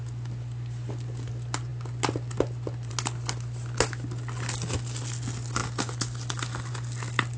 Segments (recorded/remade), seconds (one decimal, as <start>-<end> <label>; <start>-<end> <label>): 0.0-7.4 recorded